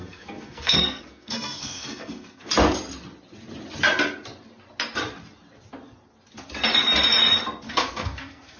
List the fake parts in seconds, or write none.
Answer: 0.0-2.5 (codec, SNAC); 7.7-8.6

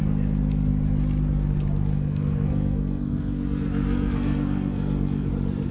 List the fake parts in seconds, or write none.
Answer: 1.9-5.3 (codec, SNAC)

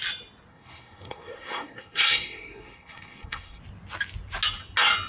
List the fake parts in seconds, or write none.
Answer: 0.5-3.6 (codec, SNAC)

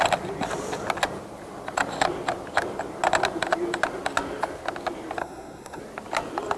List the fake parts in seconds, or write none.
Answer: 5.2-5.8 (codec, SNAC)

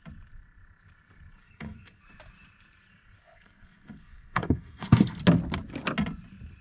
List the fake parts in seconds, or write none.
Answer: 1.4-2.0 (codec, SNAC); 3.2-5.2

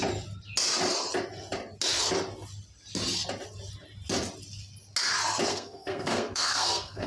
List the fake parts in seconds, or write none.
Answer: 5.5-7.1 (codec, SNAC)

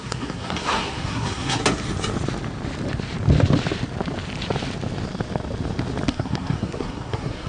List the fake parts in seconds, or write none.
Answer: 0.0-1.6 (codec, SNAC); 6.1-7.5

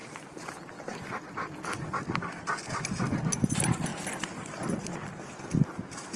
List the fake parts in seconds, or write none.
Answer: none